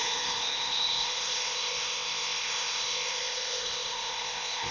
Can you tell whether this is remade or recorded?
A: remade